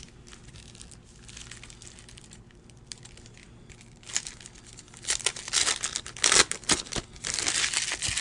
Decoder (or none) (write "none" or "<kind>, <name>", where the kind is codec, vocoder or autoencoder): none